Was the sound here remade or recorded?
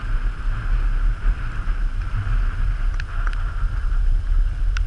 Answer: recorded